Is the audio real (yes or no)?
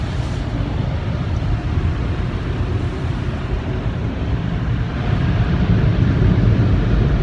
no